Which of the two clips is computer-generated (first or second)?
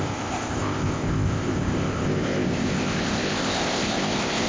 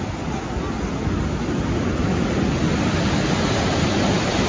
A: first